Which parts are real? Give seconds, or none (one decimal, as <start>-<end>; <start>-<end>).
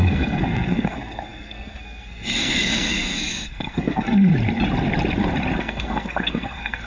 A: 4.3-5.6